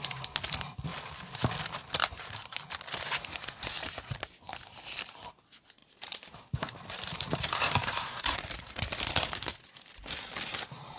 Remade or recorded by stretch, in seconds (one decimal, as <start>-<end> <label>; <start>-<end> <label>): 0.0-2.0 recorded; 2.0-2.6 remade; 2.6-5.8 recorded; 5.8-8.7 remade; 8.7-11.0 recorded